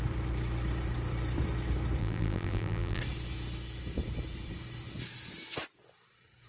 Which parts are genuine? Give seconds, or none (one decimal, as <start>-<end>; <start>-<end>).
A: 0.0-2.0; 3.0-6.5